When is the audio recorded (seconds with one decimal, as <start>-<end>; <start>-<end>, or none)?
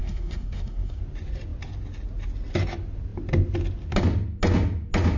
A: 1.0-5.2